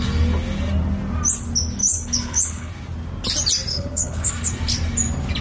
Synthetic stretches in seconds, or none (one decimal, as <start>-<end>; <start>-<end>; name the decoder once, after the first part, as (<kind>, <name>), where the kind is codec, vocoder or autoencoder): 1.8-2.7 (codec, HILCodec); 3.7-4.3